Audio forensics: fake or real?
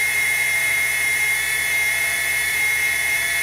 fake